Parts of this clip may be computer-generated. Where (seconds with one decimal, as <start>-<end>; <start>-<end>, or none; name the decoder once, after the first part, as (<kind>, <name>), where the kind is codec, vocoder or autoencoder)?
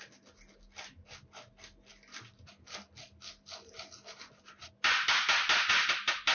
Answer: none